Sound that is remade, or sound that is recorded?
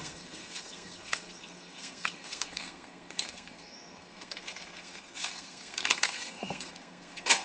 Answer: remade